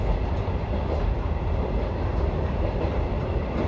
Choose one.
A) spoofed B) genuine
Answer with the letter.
A